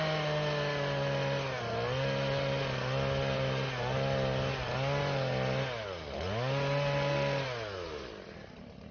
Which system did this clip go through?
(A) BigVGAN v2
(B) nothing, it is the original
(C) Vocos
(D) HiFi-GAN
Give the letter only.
B